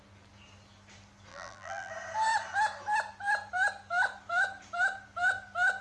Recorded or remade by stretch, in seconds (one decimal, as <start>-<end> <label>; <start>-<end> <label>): 0.0-1.3 recorded; 1.3-1.9 remade; 1.9-5.8 recorded